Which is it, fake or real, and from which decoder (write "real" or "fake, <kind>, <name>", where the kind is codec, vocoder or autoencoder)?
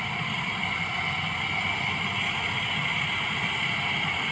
real